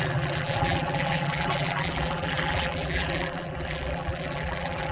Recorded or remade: remade